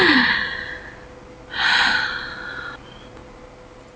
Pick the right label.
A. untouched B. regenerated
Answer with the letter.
A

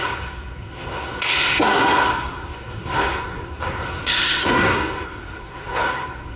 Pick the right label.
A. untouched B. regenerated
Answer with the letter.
B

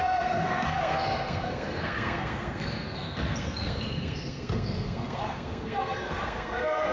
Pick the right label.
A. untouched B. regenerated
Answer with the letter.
B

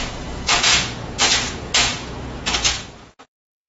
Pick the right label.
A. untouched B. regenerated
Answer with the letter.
B